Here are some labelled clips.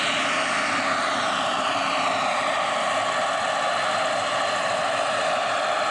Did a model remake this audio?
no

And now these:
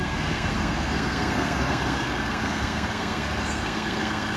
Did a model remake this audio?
yes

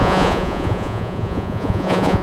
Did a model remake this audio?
yes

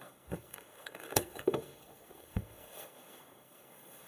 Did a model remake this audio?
yes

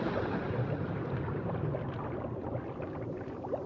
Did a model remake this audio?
no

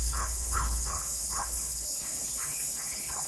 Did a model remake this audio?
yes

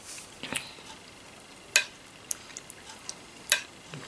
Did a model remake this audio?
no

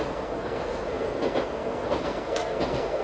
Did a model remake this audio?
yes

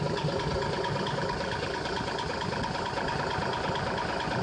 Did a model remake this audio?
no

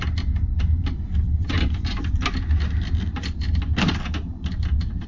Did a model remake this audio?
no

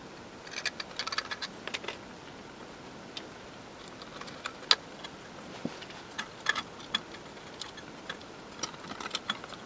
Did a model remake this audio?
no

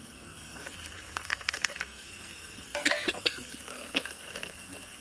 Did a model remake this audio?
yes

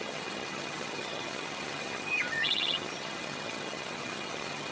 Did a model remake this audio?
yes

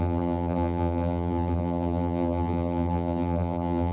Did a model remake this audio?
yes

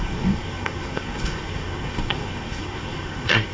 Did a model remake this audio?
yes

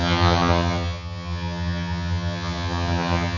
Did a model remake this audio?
yes